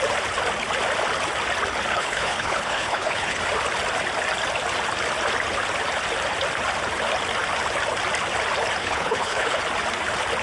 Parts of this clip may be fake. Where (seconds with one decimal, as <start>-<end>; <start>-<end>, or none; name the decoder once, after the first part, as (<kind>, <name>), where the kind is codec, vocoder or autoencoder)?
1.9-3.4 (codec, HILCodec); 8.8-9.6

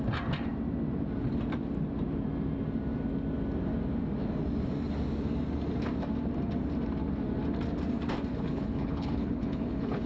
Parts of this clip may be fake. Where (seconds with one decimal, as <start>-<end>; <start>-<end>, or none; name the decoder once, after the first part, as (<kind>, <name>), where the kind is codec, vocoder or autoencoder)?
8.3-10.1 (codec, HILCodec)

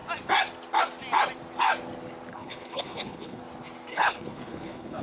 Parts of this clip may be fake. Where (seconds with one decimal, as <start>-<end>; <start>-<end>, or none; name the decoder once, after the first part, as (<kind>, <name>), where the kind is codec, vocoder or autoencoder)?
2.3-3.4 (codec, HILCodec); 3.9-5.0

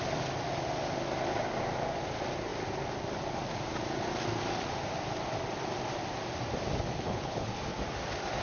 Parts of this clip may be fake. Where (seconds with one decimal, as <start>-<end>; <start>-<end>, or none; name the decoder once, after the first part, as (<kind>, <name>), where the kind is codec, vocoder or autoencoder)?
6.9-7.6 (codec, HILCodec)